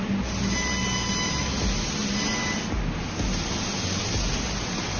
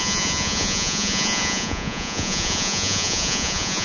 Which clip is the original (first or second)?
first